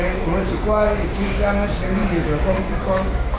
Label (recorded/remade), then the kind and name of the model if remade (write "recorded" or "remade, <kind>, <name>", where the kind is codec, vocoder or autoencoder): remade, codec, DAC